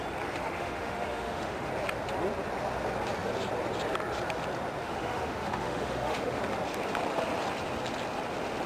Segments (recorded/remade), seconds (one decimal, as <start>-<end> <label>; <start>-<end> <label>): 0.0-0.4 recorded; 0.4-1.7 remade; 1.7-4.8 recorded; 4.8-6.4 remade; 6.4-8.7 recorded